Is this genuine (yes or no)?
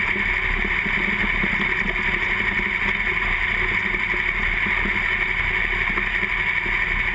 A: yes